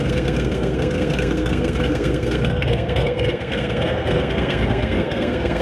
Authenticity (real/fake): fake